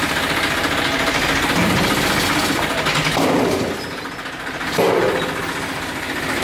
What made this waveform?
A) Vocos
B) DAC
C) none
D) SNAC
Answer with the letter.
C